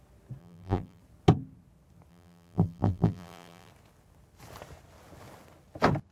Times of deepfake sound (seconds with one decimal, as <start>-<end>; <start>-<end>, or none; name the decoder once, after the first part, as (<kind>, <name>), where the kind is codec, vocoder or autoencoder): 0.4-1.0 (vocoder, BigVGAN v2); 2.1-3.7